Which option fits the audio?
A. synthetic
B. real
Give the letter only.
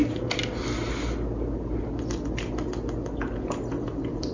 B